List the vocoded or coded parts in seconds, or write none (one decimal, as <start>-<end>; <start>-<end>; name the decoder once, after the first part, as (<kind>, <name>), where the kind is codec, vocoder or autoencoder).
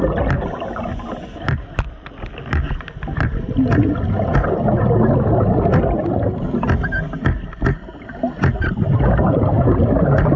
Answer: none